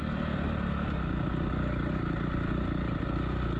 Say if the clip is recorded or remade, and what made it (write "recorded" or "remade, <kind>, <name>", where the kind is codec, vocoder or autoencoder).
recorded